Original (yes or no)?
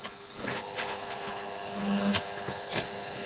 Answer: no